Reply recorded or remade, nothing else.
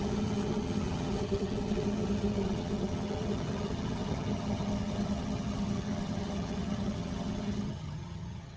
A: remade